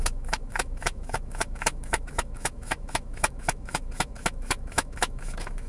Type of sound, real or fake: fake